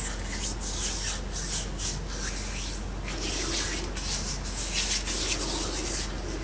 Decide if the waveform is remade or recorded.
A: recorded